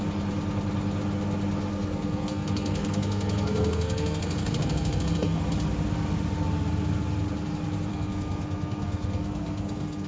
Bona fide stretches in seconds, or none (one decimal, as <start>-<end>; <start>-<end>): 0.0-1.7; 5.4-7.9